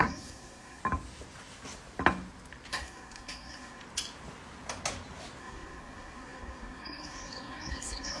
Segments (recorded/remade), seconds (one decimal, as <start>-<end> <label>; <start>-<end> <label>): 0.0-0.8 remade; 0.8-2.7 recorded; 2.7-3.8 remade; 3.8-5.4 recorded; 5.4-8.2 remade